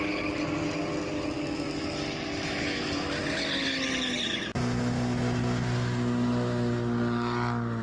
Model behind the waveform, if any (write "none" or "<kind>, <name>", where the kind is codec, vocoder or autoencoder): none